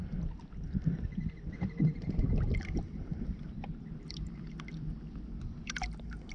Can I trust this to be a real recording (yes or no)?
no